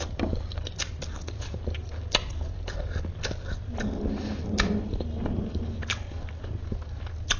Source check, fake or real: real